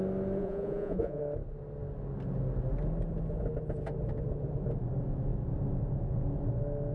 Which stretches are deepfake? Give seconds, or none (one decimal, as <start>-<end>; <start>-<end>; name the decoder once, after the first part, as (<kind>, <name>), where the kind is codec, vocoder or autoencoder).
0.4-1.2 (vocoder, Vocos)